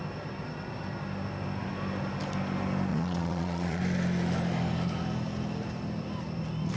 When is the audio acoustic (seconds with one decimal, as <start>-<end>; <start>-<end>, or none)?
0.0-2.9; 3.8-6.8